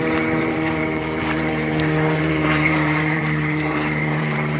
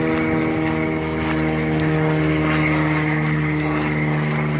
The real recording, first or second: second